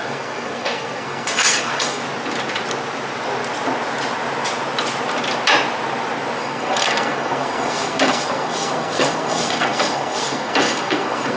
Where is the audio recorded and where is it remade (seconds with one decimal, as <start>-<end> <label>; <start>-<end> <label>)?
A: 0.0-2.0 remade; 2.0-6.4 recorded; 6.4-11.4 remade